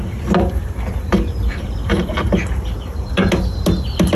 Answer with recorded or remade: recorded